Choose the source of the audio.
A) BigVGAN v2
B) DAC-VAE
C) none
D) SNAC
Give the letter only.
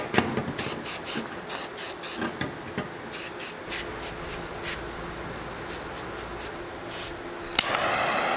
C